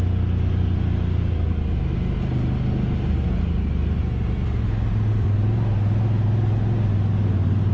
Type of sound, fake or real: real